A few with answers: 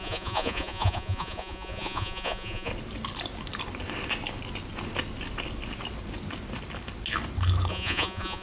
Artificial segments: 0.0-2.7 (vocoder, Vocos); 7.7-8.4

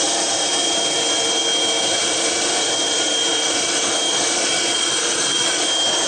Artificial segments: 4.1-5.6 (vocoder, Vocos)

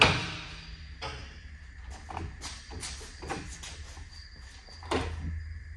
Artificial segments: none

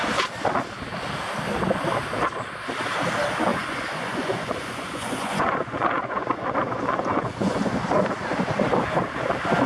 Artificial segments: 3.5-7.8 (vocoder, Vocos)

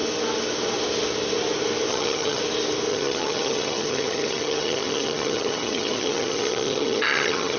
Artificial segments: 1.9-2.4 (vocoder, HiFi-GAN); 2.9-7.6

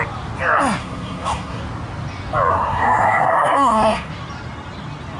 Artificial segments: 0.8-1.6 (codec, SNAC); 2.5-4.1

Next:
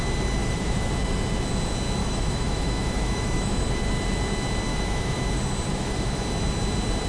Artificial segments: 0.4-0.9 (autoencoder, DAC-VAE); 2.0-3.6; 4.7-5.3; 5.7-6.2